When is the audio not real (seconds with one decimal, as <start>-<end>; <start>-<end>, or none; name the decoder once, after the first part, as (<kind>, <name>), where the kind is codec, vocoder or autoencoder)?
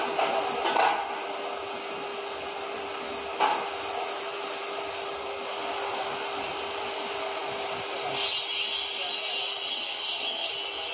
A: 9.7-10.5 (vocoder, HiFi-GAN)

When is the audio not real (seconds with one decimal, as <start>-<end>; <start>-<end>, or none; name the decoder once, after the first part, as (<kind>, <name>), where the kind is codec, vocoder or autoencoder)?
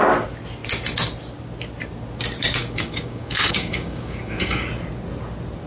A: 2.6-4.7 (codec, DAC)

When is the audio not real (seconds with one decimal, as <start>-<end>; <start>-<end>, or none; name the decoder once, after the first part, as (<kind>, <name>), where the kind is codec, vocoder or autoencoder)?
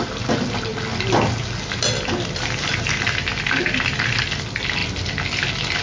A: none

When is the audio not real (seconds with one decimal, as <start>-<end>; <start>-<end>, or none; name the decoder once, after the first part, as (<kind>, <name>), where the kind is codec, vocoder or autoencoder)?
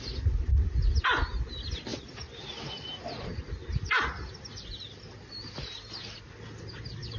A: none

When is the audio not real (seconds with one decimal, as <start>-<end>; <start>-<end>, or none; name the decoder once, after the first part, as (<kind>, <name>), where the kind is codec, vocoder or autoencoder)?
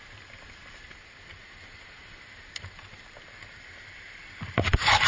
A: none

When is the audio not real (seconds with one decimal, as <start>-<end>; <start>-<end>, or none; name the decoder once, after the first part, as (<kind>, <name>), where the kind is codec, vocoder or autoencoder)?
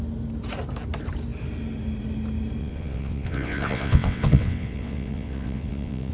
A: 2.6-6.1 (vocoder, WaveNeXt)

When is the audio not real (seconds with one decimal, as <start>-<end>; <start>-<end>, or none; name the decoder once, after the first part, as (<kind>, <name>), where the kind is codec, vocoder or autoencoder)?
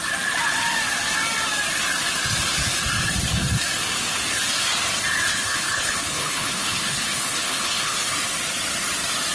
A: 5.3-8.1 (codec, HILCodec)